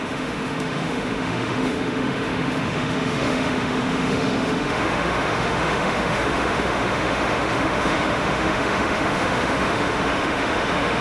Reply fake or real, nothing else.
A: fake